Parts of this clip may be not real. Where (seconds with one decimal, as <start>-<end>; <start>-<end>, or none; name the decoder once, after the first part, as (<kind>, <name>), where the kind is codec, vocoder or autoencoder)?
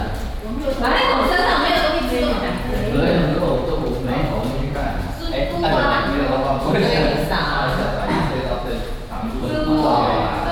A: 1.3-1.9 (vocoder, BigVGAN v2); 3.3-4.2